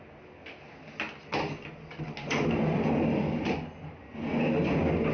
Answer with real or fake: real